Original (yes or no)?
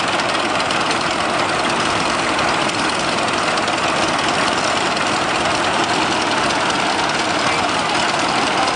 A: no